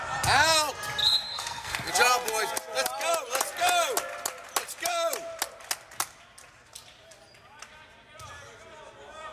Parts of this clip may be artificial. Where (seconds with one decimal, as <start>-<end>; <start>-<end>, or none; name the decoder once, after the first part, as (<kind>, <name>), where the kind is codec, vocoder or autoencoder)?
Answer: 1.0-1.9 (codec, SNAC)